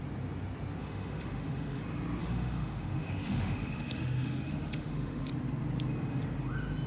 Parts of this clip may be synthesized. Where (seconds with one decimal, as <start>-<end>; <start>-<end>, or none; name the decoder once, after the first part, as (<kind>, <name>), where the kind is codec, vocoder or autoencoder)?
0.8-1.8 (autoencoder, DAC-VAE); 2.2-5.3